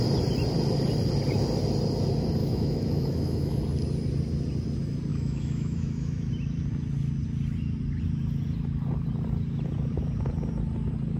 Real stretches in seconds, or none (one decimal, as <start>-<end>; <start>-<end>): 0.0-2.4; 3.6-5.1; 6.3-11.2